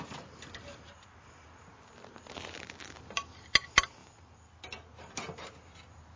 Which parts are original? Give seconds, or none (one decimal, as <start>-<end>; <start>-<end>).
0.0-6.2